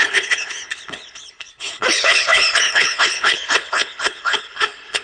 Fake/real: fake